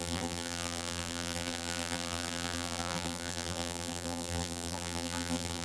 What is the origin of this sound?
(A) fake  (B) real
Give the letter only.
A